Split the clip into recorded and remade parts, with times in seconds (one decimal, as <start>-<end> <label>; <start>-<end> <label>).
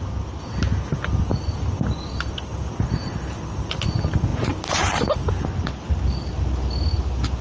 0.0-7.4 recorded